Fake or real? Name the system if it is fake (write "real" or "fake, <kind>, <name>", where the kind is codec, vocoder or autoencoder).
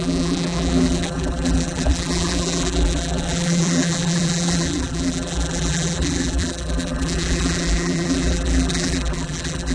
fake, vocoder, BigVGAN v2